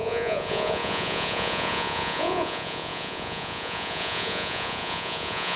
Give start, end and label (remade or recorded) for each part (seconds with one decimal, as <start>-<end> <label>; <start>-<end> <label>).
0.0-5.6 remade